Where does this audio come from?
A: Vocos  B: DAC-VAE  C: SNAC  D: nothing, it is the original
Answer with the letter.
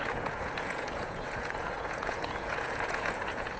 A